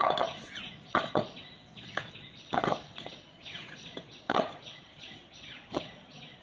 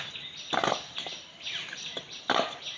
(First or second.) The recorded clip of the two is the second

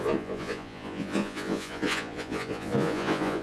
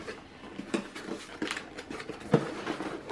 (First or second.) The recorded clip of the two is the second